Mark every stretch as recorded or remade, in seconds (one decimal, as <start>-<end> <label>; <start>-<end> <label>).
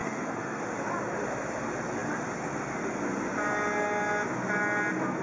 0.0-0.6 remade; 0.6-5.2 recorded